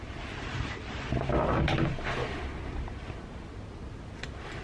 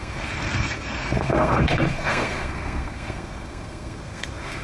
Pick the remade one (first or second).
second